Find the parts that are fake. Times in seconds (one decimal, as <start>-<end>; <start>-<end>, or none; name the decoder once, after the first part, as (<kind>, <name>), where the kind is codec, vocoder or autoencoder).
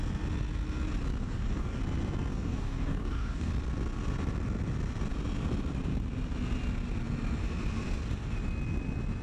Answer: 1.2-1.8 (codec, DAC); 2.3-3.5